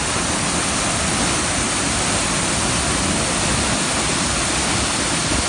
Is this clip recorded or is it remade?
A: recorded